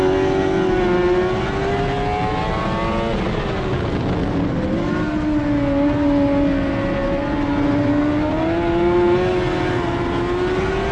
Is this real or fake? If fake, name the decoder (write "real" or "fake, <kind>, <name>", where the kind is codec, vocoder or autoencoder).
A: real